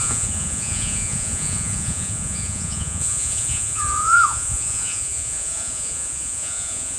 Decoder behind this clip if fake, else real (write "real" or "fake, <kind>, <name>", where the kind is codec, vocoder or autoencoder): fake, vocoder, Vocos